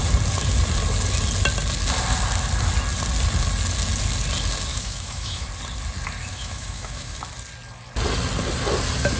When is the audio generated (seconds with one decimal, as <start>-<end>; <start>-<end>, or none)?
4.7-5.5; 6.3-7.2